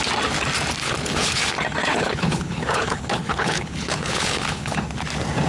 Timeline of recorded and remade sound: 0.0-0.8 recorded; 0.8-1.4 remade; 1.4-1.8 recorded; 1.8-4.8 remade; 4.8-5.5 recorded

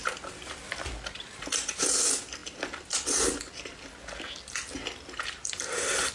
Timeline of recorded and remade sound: 0.0-6.1 recorded

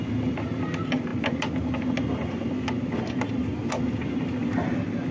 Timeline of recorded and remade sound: 0.0-5.1 recorded

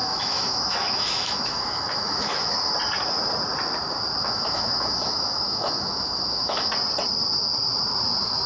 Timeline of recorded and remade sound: 0.0-2.7 remade; 2.7-4.2 recorded; 4.2-6.7 remade; 6.7-8.5 recorded

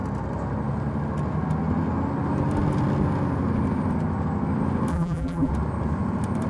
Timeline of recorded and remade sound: 0.0-4.9 recorded; 4.9-5.5 remade; 5.5-6.5 recorded